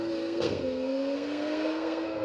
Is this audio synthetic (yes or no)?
yes